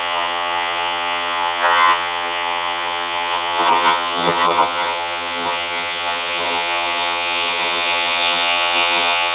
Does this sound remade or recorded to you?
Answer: remade